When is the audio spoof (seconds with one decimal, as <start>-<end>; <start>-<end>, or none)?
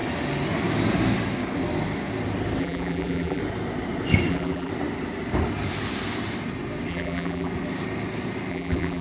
2.6-3.4; 4.3-4.7; 6.9-7.5; 8.5-9.0